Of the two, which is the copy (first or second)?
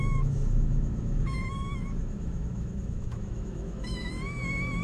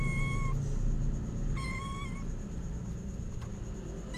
first